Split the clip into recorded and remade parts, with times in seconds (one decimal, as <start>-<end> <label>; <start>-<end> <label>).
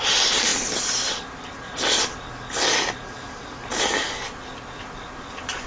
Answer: 0.0-5.7 recorded